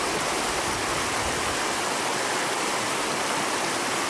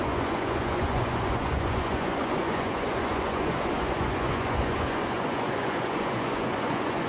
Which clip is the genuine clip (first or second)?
first